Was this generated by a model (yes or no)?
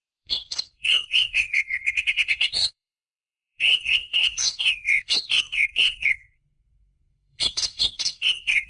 yes